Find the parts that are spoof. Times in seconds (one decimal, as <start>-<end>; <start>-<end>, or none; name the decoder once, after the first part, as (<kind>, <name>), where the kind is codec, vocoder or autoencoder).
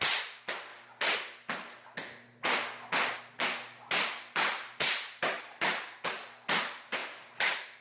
none